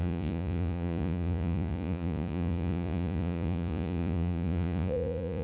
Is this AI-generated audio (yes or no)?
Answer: yes